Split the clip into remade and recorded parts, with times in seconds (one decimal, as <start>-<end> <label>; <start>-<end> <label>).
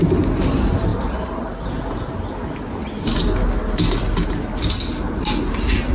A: 0.0-5.9 recorded